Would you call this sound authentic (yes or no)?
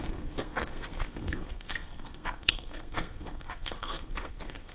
no